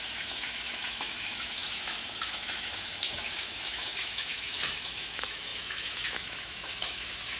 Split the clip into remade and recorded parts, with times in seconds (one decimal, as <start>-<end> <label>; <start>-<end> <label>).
0.0-7.4 remade